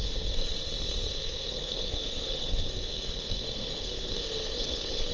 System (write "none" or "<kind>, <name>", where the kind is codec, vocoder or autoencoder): codec, SNAC